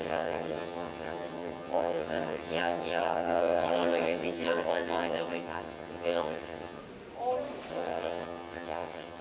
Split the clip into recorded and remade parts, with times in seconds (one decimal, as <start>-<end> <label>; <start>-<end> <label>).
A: 0.0-6.8 remade; 6.8-7.7 recorded; 7.7-9.2 remade